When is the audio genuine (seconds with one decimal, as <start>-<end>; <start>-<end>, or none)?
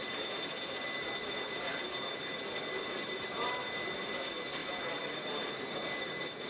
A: 0.0-6.5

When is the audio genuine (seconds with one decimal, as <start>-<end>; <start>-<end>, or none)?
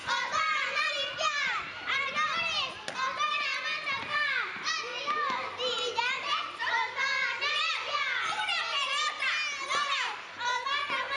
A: 0.9-11.2